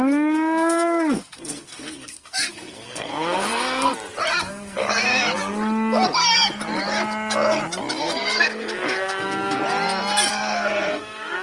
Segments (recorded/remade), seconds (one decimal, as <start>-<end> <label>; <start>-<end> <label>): 0.0-3.9 remade; 3.9-4.5 recorded; 4.5-5.0 remade; 5.0-8.0 recorded; 8.0-9.6 remade; 9.6-10.3 recorded; 10.3-11.4 remade